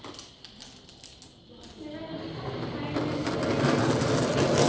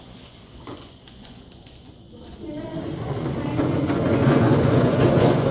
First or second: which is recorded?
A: first